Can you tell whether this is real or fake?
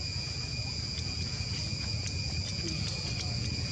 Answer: fake